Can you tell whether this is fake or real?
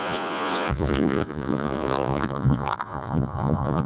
fake